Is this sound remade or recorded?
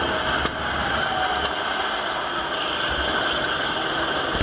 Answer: recorded